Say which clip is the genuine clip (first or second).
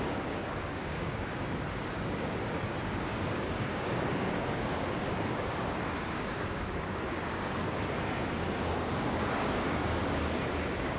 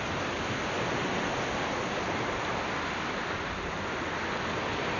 second